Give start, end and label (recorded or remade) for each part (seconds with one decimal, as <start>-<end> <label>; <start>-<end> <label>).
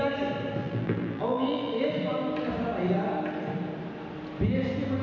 0.0-0.6 recorded; 0.6-1.7 remade; 1.7-5.0 recorded